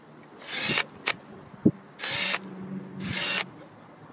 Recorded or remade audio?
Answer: recorded